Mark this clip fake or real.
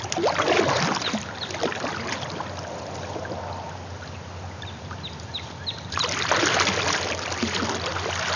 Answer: real